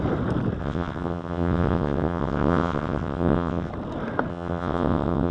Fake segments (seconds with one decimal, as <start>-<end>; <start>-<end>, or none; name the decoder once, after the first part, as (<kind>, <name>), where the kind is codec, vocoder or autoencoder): 0.6-3.7 (vocoder, WaveNeXt); 4.3-5.3

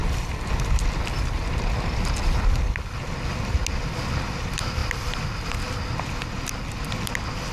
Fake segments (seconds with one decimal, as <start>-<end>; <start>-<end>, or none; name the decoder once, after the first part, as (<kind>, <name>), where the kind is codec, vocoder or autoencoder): none